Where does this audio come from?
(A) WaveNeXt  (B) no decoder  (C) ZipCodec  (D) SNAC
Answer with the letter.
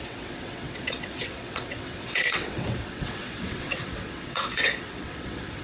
A